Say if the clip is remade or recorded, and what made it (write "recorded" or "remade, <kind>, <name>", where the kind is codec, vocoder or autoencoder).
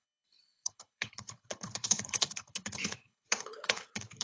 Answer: remade, codec, HILCodec